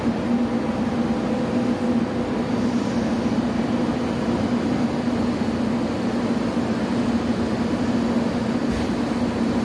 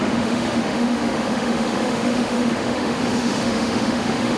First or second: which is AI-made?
second